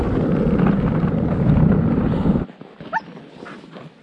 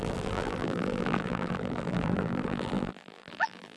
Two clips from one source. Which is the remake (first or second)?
second